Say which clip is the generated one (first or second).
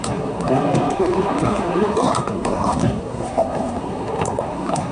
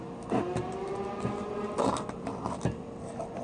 first